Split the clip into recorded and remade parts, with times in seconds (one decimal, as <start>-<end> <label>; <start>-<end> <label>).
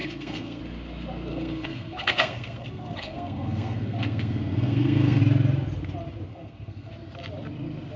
0.0-0.6 remade; 0.6-1.3 recorded; 1.3-5.2 remade; 5.2-6.3 recorded; 6.3-6.9 remade; 6.9-8.0 recorded